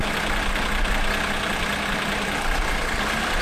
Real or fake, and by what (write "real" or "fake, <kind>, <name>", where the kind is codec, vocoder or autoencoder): fake, vocoder, BigVGAN v2